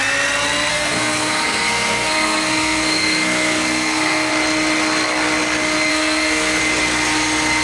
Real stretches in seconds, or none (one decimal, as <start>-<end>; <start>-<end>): 0.0-0.7; 4.3-5.9; 6.6-7.6